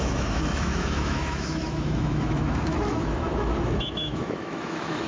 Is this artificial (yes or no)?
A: yes